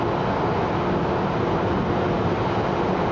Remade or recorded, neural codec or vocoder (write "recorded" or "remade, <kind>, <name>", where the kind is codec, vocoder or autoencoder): recorded